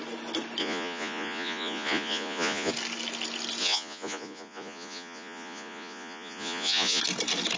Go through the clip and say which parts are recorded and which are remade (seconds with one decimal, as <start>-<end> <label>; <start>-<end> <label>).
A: 0.0-0.6 recorded; 0.6-2.7 remade; 2.7-3.6 recorded; 3.6-7.0 remade; 7.0-7.6 recorded